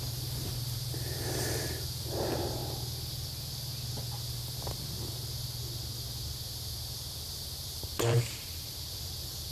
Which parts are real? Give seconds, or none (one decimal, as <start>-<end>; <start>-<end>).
2.6-7.8